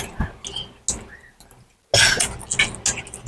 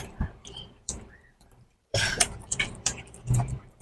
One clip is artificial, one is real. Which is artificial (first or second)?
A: second